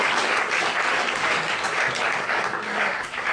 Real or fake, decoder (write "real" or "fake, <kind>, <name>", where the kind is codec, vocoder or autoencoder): fake, codec, DAC